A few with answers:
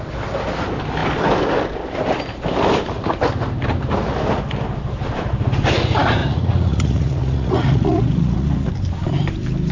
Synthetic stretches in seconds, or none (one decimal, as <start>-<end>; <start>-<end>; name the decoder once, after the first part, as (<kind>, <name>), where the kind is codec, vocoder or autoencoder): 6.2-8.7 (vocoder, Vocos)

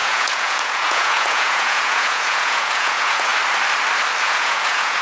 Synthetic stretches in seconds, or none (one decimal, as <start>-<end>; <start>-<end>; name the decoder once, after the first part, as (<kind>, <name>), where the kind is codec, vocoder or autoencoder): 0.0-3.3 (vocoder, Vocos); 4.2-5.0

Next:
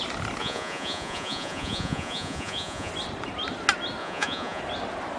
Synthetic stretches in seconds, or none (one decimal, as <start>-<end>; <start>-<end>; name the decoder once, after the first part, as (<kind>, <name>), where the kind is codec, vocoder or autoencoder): 0.4-2.9 (vocoder, Vocos); 4.0-4.6